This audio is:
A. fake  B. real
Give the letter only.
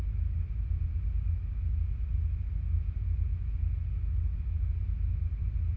B